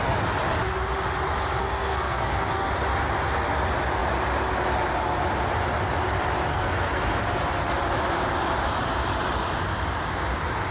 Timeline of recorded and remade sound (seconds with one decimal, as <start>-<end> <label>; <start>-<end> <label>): 0.0-1.6 recorded; 1.6-2.7 remade; 2.7-6.5 recorded; 6.5-7.0 remade; 7.0-10.7 recorded